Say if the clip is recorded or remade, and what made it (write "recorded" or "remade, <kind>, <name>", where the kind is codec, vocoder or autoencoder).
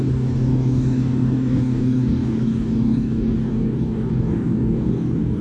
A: remade, codec, DAC